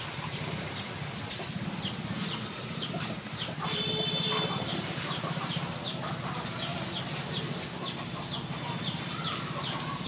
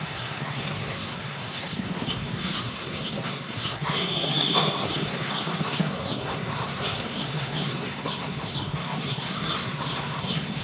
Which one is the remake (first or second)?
second